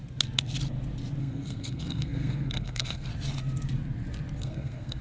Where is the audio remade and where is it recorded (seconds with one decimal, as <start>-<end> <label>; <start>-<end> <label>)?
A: 0.0-1.2 recorded; 1.2-3.1 remade; 3.1-4.4 recorded; 4.4-5.0 remade